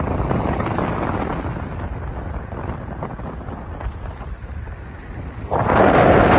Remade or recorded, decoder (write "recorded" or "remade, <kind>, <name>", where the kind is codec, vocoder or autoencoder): recorded